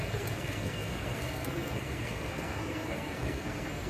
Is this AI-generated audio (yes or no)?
yes